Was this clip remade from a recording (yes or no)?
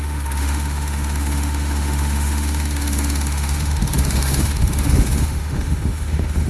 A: yes